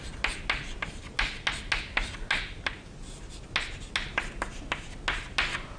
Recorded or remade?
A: recorded